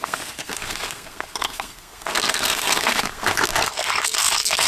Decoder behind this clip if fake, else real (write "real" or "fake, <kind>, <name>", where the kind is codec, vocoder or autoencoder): fake, codec, SNAC